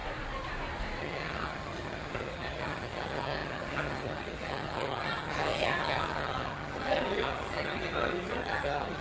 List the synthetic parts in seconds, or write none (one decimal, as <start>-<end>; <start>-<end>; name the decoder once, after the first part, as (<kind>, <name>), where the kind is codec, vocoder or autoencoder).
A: 1.0-9.0 (vocoder, HiFi-GAN)